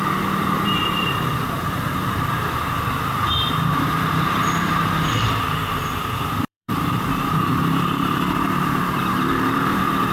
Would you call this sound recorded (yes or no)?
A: no